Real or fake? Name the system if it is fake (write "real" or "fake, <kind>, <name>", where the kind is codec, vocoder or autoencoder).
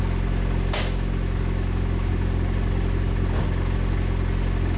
real